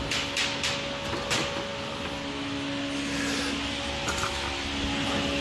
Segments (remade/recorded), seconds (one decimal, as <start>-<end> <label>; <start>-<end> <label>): 0.0-5.4 recorded